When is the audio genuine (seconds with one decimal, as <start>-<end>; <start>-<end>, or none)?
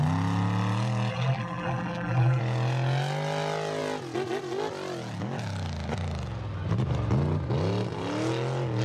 0.0-1.1; 2.4-8.8